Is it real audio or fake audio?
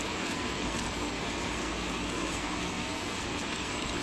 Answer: fake